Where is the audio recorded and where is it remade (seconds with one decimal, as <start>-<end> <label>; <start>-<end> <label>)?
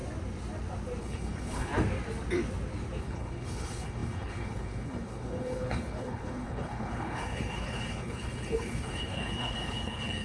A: 0.0-1.0 recorded; 1.0-1.7 remade; 1.7-3.0 recorded; 3.0-10.2 remade